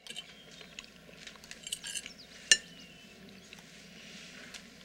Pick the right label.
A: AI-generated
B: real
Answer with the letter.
B